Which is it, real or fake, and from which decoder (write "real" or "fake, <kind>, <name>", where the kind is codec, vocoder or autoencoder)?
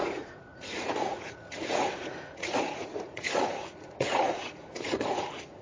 fake, vocoder, Vocos